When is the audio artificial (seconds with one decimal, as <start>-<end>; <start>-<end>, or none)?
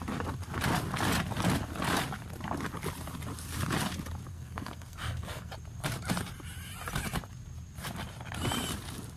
4.3-5.5